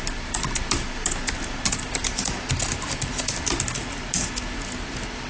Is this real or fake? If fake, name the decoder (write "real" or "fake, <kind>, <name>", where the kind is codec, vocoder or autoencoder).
real